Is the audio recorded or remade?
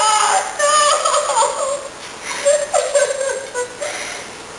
recorded